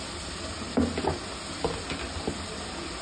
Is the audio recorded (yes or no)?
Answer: yes